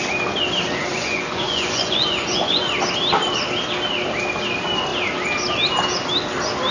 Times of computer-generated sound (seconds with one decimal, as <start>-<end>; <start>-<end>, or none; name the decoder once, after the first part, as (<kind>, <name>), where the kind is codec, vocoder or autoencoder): 0.9-2.7 (vocoder, Vocos)